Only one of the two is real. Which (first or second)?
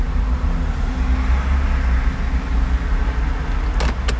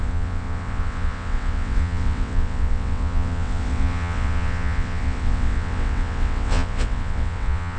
first